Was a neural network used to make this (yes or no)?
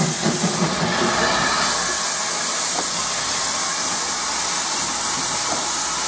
no